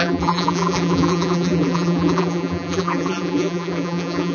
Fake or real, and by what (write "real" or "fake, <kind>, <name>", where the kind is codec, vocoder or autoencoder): fake, vocoder, BigVGAN v2